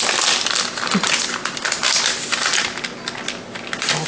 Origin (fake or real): real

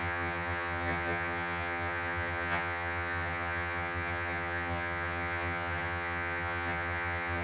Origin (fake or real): fake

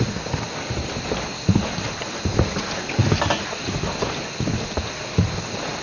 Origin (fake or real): real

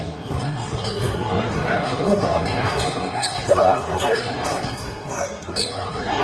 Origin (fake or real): fake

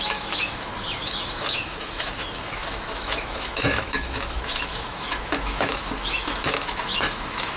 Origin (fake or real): fake